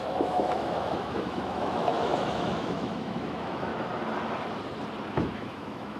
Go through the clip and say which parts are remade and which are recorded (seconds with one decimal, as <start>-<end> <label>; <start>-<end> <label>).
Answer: 0.0-3.7 remade; 3.7-5.1 recorded; 5.1-6.0 remade